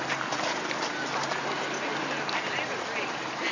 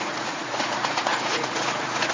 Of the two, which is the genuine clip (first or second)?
first